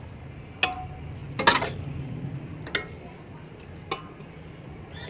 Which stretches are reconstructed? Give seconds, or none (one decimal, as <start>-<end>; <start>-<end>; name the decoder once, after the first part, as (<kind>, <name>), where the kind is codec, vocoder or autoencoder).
none